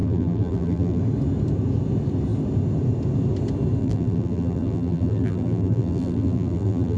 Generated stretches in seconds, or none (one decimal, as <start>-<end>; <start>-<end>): 0.0-1.0; 3.8-7.0